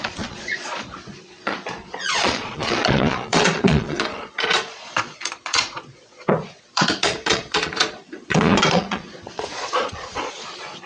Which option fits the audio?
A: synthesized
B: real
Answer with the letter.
A